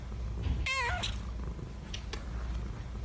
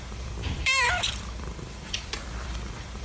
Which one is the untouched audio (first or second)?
first